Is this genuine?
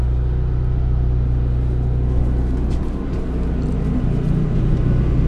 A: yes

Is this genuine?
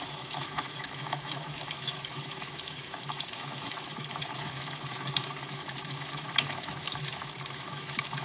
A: no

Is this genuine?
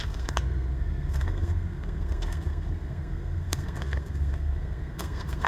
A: no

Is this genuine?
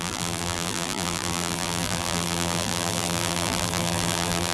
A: no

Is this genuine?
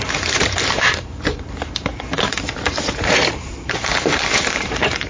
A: no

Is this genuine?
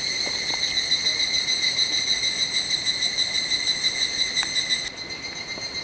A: yes